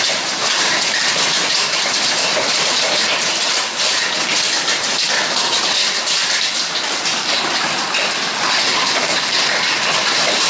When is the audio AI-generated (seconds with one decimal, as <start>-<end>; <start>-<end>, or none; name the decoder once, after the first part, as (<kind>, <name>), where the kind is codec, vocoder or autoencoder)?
none